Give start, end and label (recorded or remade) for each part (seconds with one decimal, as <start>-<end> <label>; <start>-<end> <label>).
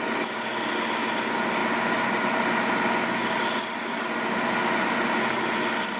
0.0-6.0 recorded